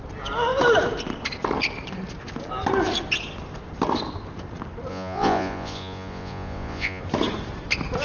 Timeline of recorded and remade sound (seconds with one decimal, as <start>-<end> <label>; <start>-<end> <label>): 0.0-4.9 recorded; 4.9-7.0 remade; 7.0-8.0 recorded